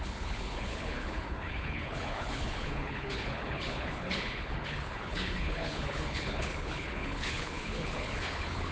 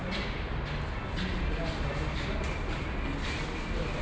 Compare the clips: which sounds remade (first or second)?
first